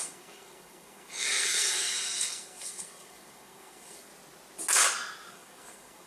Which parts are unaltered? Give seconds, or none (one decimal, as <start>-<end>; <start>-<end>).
4.1-5.3